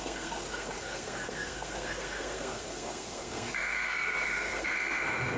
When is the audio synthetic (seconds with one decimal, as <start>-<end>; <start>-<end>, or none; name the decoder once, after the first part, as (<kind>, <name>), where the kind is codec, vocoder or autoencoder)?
0.0-5.4 (codec, SNAC)